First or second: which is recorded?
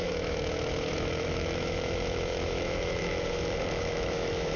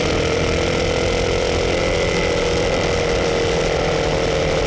second